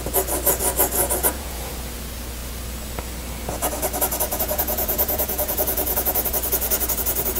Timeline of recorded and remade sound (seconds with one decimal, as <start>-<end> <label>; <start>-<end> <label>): 0.0-1.2 recorded; 1.2-1.7 remade; 1.7-4.3 recorded; 4.3-6.1 remade; 6.1-7.4 recorded